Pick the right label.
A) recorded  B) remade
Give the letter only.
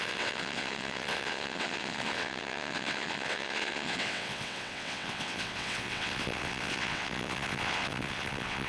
B